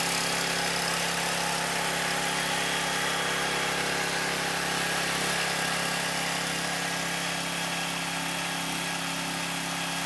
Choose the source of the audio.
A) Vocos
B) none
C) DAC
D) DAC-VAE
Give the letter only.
B